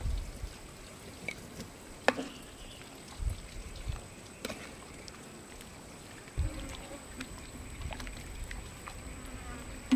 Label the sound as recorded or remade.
recorded